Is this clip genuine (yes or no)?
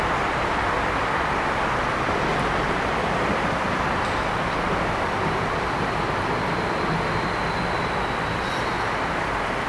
yes